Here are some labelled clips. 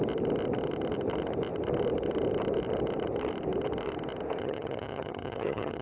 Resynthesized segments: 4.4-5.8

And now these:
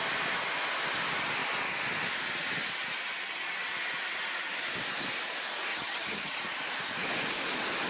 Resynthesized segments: 5.7-6.4

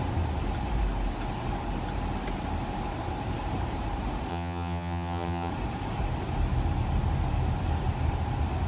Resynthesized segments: 4.3-5.5

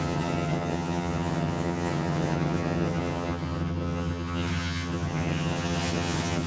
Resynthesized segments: 0.0-6.5

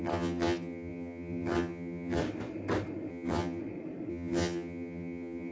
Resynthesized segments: 0.0-2.2; 3.1-3.6; 4.1-5.5

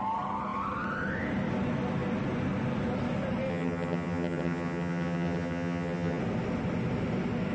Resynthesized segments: 3.5-6.2

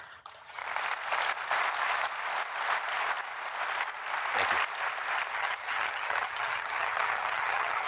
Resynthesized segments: 0.0-0.6; 5.3-7.9